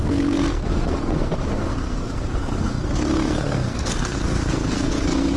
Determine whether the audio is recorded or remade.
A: remade